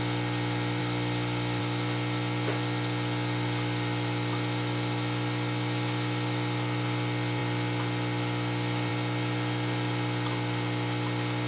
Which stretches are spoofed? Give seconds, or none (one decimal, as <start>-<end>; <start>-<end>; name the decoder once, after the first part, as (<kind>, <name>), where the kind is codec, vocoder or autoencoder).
none